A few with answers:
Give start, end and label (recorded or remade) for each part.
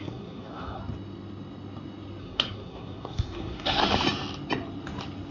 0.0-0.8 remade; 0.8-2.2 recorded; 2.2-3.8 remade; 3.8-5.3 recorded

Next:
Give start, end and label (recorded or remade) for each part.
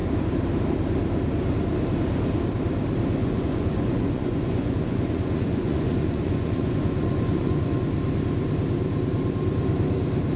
0.0-3.2 recorded; 3.2-7.8 remade; 7.8-10.4 recorded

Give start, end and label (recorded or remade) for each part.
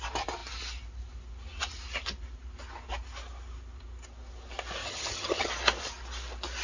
0.0-4.8 recorded; 4.8-5.5 remade; 5.5-6.6 recorded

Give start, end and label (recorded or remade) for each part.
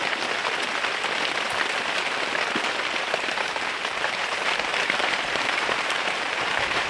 0.0-0.4 remade; 0.4-3.2 recorded; 3.2-6.9 remade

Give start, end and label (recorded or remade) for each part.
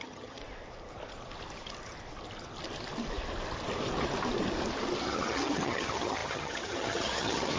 0.0-0.4 remade; 0.4-5.0 recorded; 5.0-7.6 remade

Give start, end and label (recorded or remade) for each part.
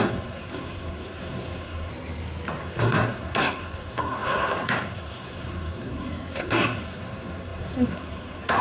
0.0-1.9 remade; 1.9-2.6 recorded; 2.6-8.6 remade